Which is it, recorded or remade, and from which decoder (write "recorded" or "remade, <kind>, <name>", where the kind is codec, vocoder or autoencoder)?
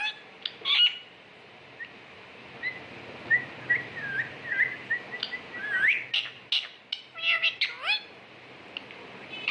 recorded